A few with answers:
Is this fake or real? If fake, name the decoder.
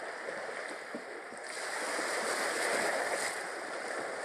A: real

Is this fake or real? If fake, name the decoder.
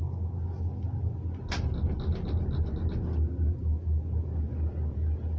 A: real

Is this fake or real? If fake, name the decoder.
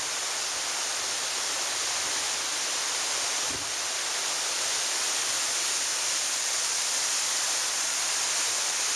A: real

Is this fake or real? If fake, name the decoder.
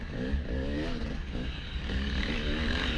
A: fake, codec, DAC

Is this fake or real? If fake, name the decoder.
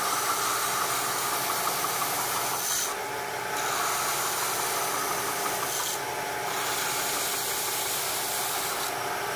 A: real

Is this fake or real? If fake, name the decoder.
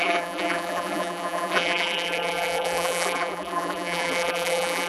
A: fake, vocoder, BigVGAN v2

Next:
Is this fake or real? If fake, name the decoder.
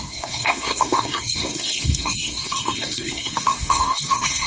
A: fake, codec, SNAC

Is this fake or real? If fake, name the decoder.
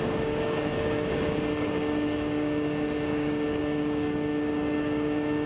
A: fake, codec, DAC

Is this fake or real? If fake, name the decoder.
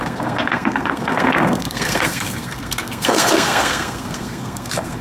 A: fake, codec, SNAC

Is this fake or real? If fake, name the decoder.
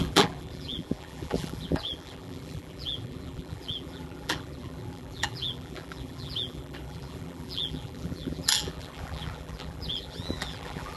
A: fake, vocoder, BigVGAN v2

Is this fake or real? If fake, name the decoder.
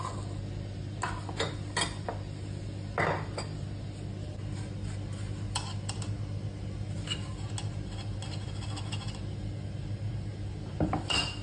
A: real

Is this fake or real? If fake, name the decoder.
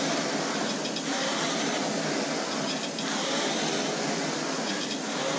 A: real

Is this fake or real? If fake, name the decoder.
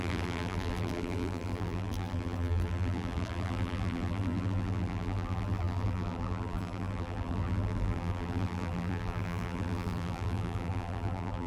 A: fake, vocoder, BigVGAN v2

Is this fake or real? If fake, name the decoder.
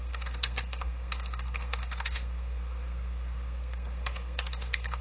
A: fake, codec, SNAC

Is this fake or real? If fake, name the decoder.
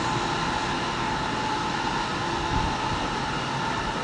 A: real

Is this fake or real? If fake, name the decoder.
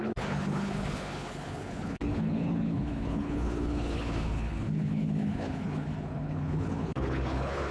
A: fake, codec, HILCodec